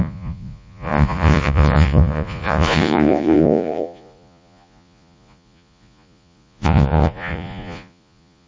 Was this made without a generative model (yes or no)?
no